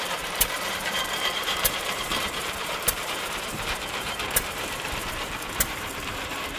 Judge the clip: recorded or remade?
remade